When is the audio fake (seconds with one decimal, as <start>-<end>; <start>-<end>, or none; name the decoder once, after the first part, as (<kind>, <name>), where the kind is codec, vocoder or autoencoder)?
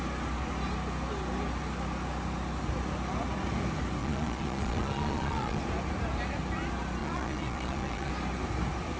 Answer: 4.0-5.6 (vocoder, Vocos); 7.0-8.1